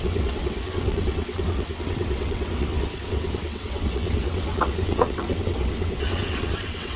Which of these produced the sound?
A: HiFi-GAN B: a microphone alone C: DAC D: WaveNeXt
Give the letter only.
D